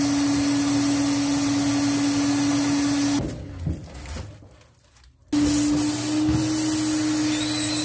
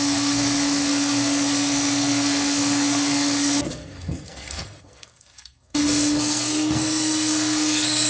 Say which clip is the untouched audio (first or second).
first